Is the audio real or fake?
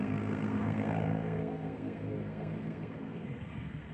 fake